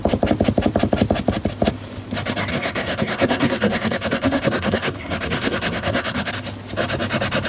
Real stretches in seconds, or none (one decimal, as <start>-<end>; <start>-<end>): 0.0-2.5; 6.3-7.5